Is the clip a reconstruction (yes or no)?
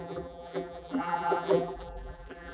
yes